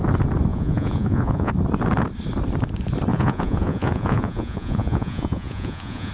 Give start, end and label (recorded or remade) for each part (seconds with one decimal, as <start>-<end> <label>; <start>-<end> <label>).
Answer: 0.0-0.5 recorded; 0.5-1.5 remade; 1.5-3.1 recorded; 3.1-6.1 remade